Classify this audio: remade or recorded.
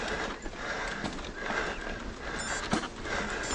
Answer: recorded